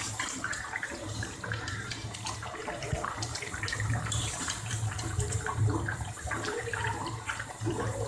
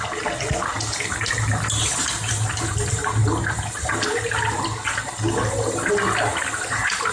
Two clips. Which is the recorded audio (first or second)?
second